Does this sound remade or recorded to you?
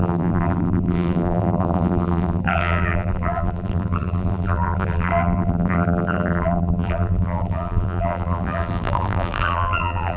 remade